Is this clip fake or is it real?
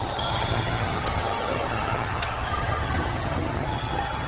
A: fake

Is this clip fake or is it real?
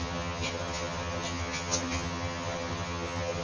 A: fake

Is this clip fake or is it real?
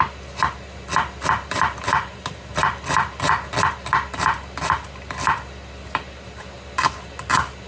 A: real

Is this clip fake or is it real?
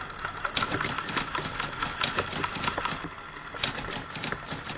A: real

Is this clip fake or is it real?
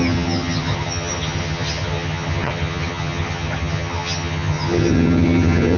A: fake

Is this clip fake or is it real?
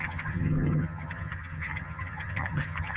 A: fake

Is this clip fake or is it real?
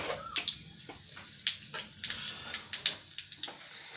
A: real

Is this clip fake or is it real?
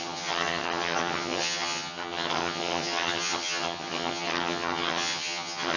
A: fake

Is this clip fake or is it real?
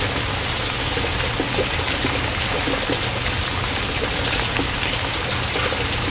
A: real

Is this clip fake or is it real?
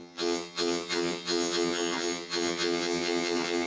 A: fake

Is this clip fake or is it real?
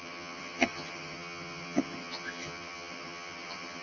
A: fake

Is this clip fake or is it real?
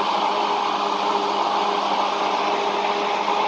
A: real